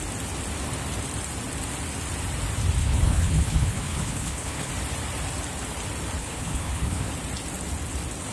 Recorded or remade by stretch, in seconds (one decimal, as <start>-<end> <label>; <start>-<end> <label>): 0.0-2.8 recorded; 2.8-4.7 remade; 4.7-6.2 recorded; 6.2-7.1 remade; 7.1-8.3 recorded